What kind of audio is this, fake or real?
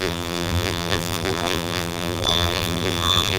fake